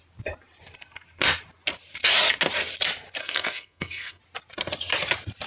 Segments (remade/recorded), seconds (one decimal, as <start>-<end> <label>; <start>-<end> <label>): 0.0-3.2 recorded; 3.2-4.2 remade; 4.2-5.5 recorded